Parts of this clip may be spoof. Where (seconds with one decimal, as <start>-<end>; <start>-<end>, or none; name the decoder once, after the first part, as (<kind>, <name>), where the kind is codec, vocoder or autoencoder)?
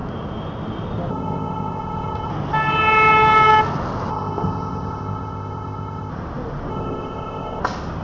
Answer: 1.1-2.3 (codec, ZipCodec); 4.1-6.1; 6.7-7.6